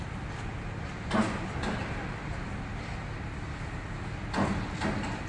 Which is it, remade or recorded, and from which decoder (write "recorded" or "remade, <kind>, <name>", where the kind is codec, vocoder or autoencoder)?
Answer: recorded